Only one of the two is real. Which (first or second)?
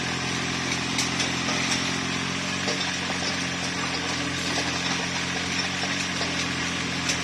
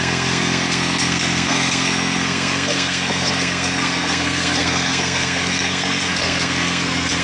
first